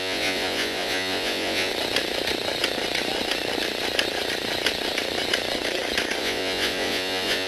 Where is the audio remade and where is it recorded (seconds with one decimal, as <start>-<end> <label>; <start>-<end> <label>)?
0.0-1.7 remade; 1.7-6.2 recorded; 6.2-7.5 remade